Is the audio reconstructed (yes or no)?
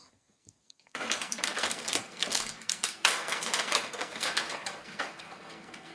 yes